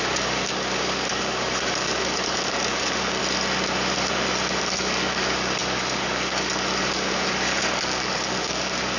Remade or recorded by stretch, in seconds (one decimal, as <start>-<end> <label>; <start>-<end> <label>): 0.0-3.2 remade; 3.2-4.6 recorded; 4.6-9.0 remade